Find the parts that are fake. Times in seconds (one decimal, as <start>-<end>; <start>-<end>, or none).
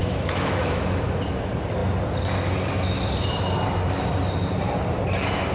0.0-0.8